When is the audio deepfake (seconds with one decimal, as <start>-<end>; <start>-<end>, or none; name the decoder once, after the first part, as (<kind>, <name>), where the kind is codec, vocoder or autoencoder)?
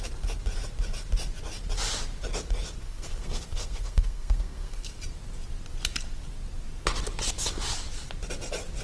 2.8-5.0 (codec, SNAC)